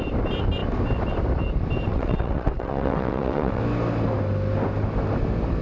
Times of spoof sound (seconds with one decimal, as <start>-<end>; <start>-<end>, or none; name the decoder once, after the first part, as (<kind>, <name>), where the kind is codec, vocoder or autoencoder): 1.9-3.6 (vocoder, WaveNeXt)